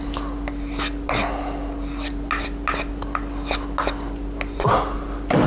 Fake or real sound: real